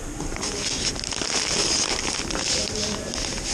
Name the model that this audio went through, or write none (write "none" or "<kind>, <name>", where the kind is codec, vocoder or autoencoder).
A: none